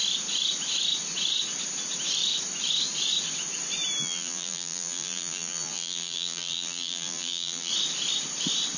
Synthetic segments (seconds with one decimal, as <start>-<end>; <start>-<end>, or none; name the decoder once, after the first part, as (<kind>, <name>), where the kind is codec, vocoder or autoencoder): 4.0-7.7 (vocoder, BigVGAN v2)